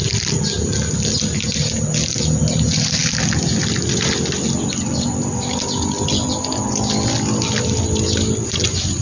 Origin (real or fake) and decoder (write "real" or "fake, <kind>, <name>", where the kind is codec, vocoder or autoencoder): real